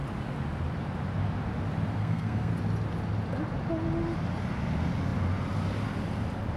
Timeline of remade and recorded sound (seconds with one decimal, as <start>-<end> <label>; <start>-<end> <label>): 0.0-2.0 recorded; 2.0-2.5 remade; 2.5-6.6 recorded